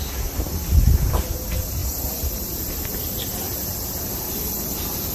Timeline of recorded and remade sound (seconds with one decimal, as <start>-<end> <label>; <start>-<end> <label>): 0.0-5.1 recorded